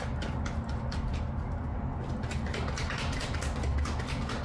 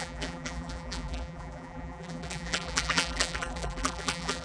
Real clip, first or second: first